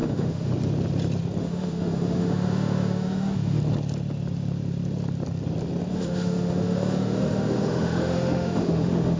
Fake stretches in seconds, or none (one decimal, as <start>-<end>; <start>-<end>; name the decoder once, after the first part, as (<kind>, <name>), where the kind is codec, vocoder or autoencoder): 0.0-0.5 (autoencoder, DAC-VAE); 1.4-3.6; 5.9-9.2